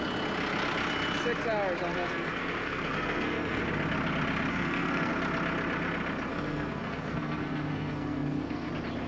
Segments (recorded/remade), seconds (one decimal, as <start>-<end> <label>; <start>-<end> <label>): 0.0-1.9 recorded; 1.9-3.6 remade; 3.6-4.5 recorded; 4.5-5.1 remade; 5.1-6.3 recorded; 6.3-8.7 remade; 8.7-9.1 recorded

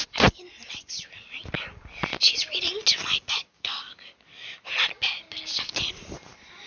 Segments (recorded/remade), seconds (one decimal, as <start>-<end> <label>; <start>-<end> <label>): 0.0-3.0 recorded; 3.0-4.7 remade; 4.7-6.7 recorded

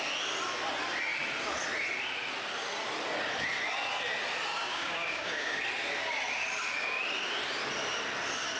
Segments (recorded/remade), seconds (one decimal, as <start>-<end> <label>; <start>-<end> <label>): 0.0-4.5 recorded; 4.5-5.6 remade; 5.6-8.6 recorded